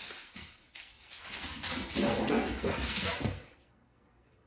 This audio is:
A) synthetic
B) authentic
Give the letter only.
A